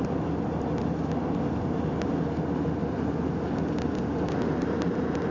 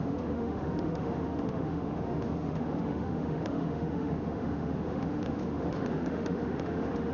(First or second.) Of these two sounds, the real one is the first